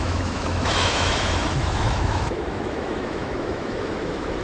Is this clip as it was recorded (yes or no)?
no